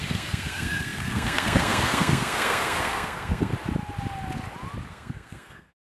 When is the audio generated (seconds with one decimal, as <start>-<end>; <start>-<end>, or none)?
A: 0.0-3.5; 4.9-5.9